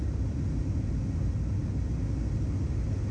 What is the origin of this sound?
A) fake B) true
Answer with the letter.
B